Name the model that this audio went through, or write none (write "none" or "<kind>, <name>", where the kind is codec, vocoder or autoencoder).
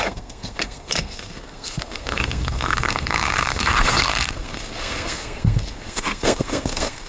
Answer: codec, SNAC